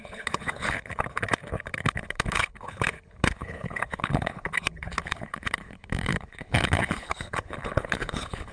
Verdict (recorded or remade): remade